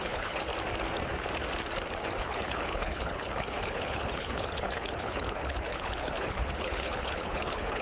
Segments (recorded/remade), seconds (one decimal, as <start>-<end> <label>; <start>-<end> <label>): 0.0-0.5 remade; 0.5-2.2 recorded; 2.2-7.8 remade